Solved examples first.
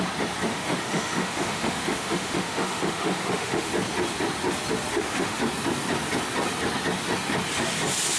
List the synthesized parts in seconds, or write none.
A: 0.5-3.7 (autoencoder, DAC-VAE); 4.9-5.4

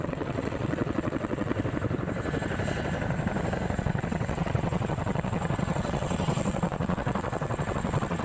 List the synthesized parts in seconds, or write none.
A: 0.0-1.5 (vocoder, WaveNeXt); 3.8-8.2

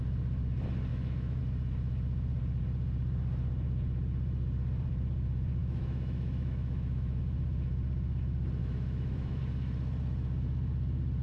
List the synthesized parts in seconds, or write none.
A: 0.9-1.4 (autoencoder, DAC-VAE); 5.6-7.2; 8.6-9.4

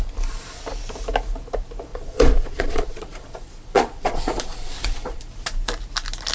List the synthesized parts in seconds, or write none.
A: 1.9-5.2 (vocoder, Vocos)

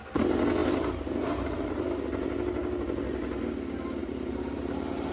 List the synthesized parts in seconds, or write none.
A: 0.6-2.0 (vocoder, BigVGAN v2); 4.0-5.1

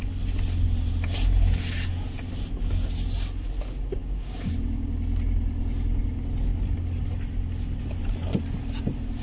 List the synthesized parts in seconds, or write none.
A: 4.0-4.5 (codec, DAC)

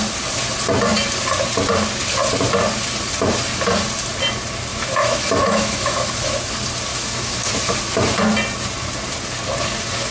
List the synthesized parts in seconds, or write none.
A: 4.7-6.5 (autoencoder, DAC-VAE); 6.9-7.5